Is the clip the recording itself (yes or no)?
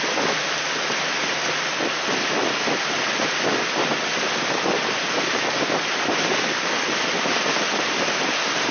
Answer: yes